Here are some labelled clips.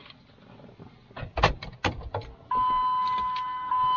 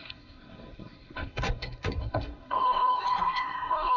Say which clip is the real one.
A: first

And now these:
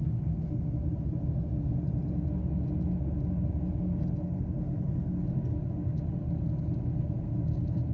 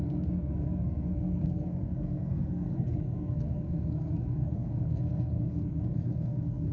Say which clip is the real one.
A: first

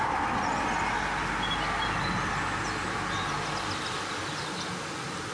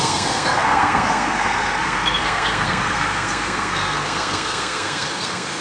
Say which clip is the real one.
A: first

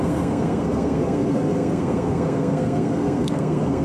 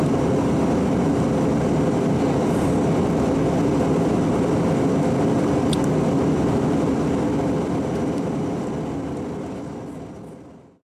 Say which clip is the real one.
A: second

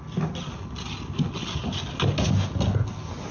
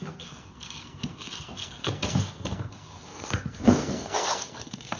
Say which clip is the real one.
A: first